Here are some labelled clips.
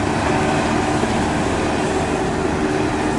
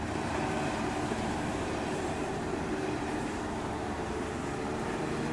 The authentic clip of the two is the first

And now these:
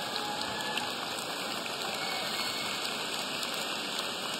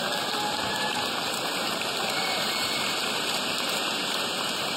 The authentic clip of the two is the first